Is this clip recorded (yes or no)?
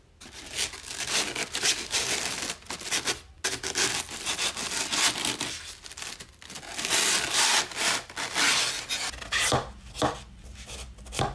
yes